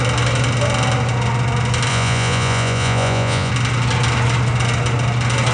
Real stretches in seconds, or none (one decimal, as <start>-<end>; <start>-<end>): 0.0-1.9; 3.5-5.5